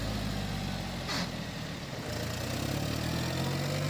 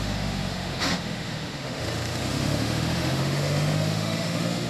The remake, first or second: second